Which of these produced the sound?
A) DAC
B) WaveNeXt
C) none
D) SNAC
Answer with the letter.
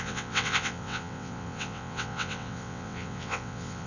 B